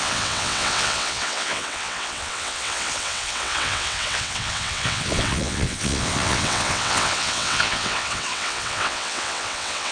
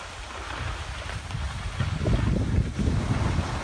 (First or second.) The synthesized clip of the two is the first